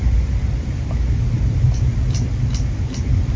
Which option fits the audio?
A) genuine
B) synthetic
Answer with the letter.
A